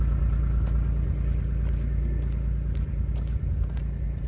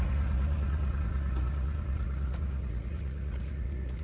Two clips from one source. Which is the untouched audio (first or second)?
first